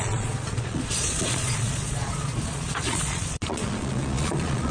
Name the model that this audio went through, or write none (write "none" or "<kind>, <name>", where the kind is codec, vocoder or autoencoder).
vocoder, Vocos